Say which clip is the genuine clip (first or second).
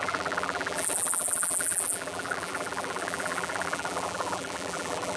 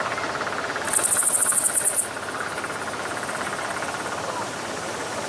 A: second